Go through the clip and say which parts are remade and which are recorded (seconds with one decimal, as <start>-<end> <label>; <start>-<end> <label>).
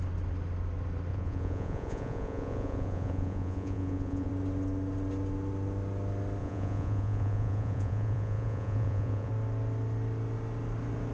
0.0-1.1 recorded; 1.1-4.3 remade; 4.3-6.4 recorded; 6.4-9.3 remade; 9.3-11.1 recorded